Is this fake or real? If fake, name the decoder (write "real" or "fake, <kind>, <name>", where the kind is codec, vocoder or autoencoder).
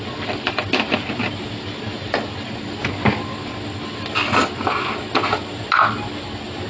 real